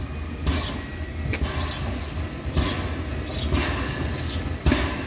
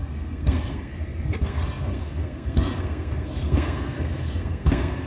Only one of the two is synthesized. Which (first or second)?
second